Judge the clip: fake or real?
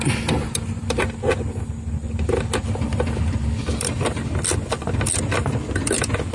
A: real